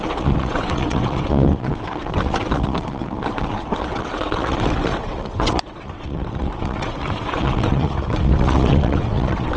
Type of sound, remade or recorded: remade